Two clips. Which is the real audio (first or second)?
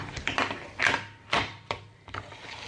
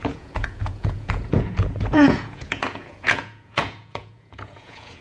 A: first